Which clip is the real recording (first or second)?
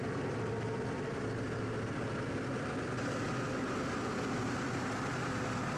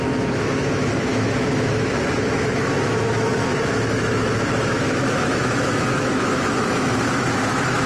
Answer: first